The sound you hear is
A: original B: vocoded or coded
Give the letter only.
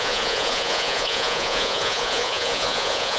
B